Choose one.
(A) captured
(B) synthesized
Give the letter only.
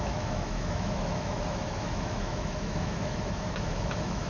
B